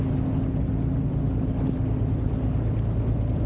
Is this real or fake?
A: real